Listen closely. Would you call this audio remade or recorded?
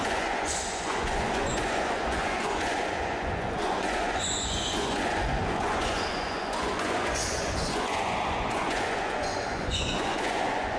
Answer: remade